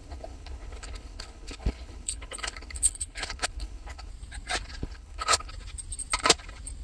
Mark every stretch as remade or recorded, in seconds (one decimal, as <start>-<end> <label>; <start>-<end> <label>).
0.0-4.1 remade; 4.1-4.8 recorded; 4.8-5.5 remade; 5.5-6.8 recorded